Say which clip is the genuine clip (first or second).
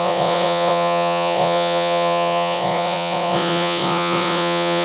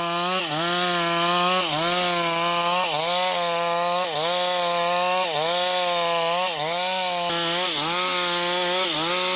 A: second